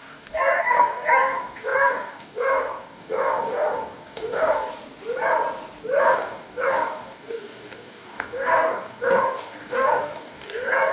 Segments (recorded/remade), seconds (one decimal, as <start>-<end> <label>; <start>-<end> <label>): 0.0-4.7 remade; 4.7-6.0 recorded; 6.0-10.9 remade